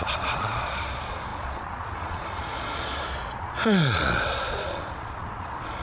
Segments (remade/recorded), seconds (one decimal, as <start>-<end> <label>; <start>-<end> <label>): 0.0-5.8 remade